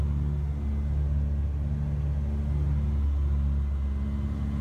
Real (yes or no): yes